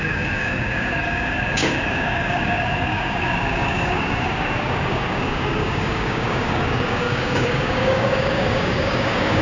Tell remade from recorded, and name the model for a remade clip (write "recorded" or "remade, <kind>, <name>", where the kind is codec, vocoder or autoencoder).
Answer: remade, codec, DAC